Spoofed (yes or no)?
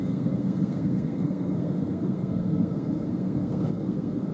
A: yes